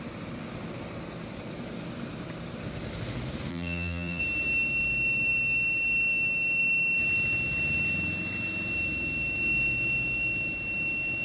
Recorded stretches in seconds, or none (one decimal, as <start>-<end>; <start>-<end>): 0.0-3.5; 4.2-11.2